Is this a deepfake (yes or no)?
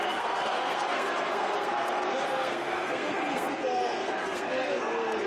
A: yes